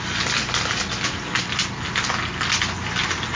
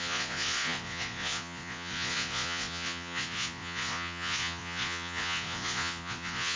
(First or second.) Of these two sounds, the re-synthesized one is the second